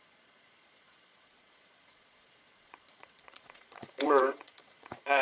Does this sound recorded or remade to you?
remade